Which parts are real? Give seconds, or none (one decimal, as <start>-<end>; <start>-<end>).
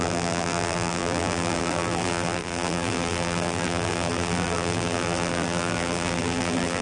none